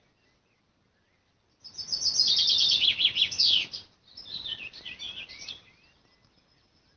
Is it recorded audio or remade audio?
recorded